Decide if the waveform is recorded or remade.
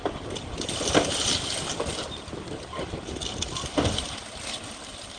recorded